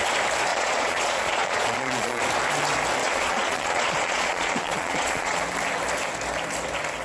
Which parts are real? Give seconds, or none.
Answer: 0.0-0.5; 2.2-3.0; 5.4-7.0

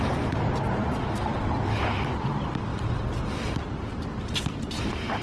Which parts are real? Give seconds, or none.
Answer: 0.0-5.2

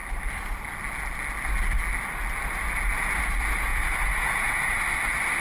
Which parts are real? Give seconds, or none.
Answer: 0.0-3.7; 4.8-5.4

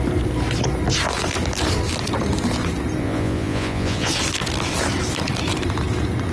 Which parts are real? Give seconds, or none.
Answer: 0.0-3.0; 4.1-6.3

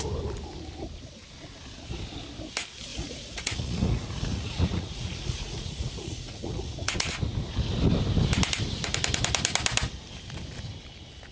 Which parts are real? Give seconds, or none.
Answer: 0.0-2.9; 7.1-11.3